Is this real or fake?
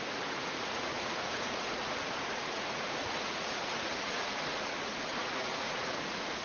fake